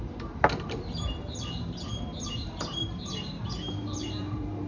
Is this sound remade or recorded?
remade